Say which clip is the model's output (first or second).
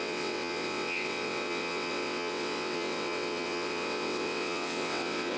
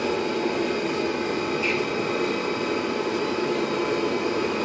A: first